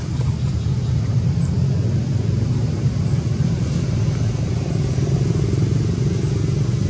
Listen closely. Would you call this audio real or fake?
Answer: real